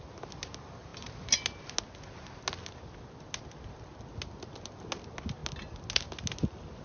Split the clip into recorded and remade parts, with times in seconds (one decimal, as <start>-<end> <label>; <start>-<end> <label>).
0.0-6.8 recorded